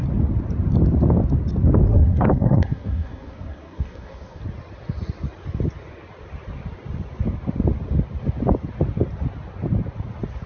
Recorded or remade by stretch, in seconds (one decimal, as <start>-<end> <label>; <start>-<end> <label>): 0.0-1.9 recorded; 1.9-4.4 remade; 4.4-10.5 recorded